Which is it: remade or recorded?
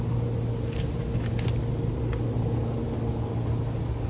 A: recorded